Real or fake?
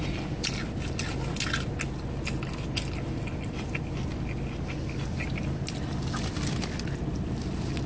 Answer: real